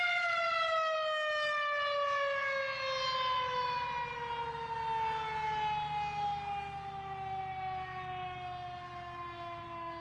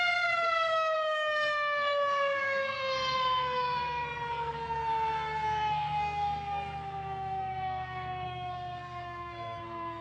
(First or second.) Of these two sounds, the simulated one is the second